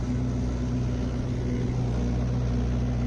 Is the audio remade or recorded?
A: recorded